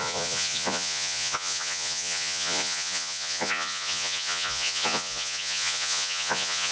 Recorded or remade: remade